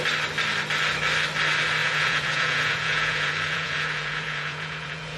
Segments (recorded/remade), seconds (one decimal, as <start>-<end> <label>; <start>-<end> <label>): 0.0-1.8 recorded; 1.8-5.2 remade